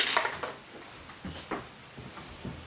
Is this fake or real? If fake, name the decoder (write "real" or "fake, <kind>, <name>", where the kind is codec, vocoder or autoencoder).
real